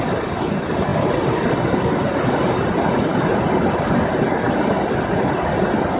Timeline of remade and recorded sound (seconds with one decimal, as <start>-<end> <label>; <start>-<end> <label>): 0.0-6.0 recorded